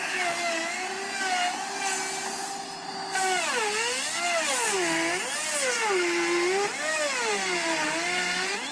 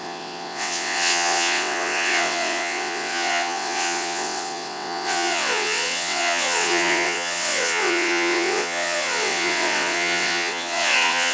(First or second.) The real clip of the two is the first